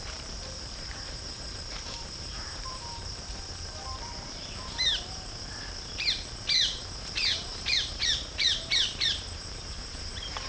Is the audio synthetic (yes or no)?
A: yes